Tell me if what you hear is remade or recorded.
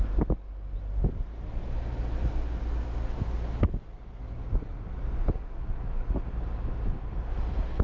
recorded